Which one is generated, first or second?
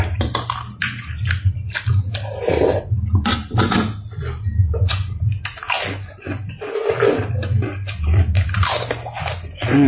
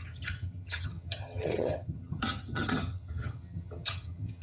second